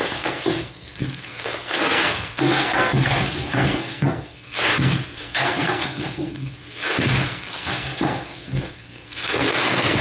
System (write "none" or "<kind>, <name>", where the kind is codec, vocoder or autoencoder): codec, SNAC